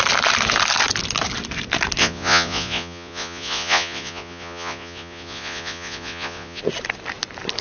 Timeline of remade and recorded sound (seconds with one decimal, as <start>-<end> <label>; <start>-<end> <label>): 0.0-2.0 recorded; 2.0-6.6 remade; 6.6-7.6 recorded